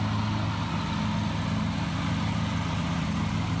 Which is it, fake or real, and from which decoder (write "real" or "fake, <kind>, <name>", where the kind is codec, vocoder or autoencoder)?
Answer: real